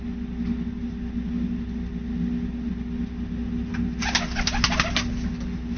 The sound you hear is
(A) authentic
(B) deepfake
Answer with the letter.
A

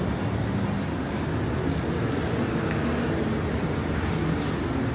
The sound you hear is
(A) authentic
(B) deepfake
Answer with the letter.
A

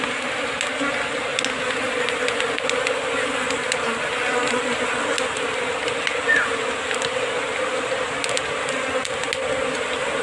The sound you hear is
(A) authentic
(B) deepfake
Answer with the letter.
A